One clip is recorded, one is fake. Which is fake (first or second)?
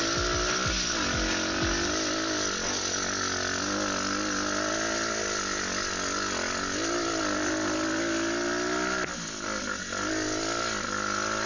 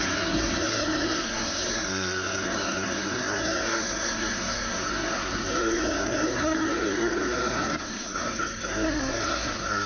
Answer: second